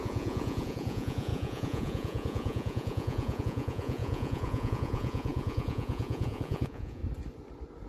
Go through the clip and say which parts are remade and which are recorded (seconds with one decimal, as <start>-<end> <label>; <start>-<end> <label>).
0.0-7.0 remade; 7.0-7.9 recorded